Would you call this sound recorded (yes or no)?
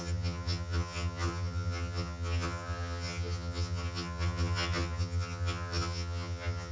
no